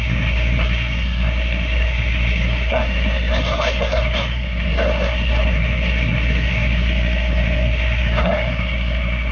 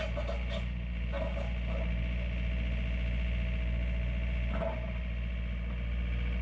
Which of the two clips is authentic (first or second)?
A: second